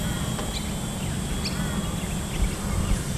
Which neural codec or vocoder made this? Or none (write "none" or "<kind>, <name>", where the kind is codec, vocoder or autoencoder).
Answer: none